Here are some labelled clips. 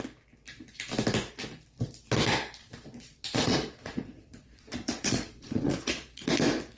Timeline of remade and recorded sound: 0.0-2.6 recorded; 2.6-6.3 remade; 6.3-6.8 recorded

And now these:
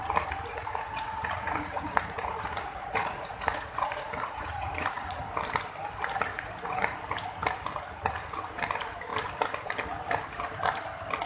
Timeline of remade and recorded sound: 0.0-0.5 recorded; 0.5-5.2 remade; 5.2-6.3 recorded; 6.3-7.0 remade; 7.0-11.3 recorded

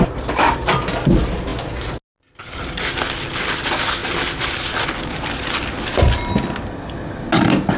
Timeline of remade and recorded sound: 0.0-7.8 recorded

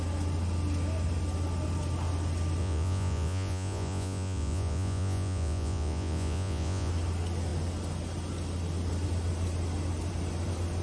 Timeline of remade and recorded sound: 0.0-2.6 recorded; 2.6-6.9 remade; 6.9-10.8 recorded

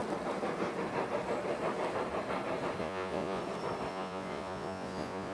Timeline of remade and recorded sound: 0.0-2.8 recorded; 2.8-3.4 remade; 3.4-3.9 recorded; 3.9-5.3 remade

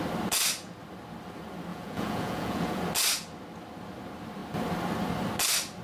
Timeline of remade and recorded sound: 0.0-1.7 recorded; 1.7-2.8 remade; 2.8-5.8 recorded

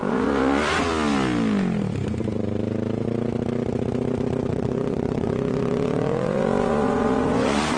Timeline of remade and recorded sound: 0.0-0.9 remade; 0.9-4.5 recorded; 4.5-7.8 remade